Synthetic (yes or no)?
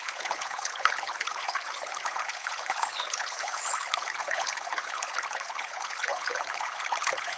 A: yes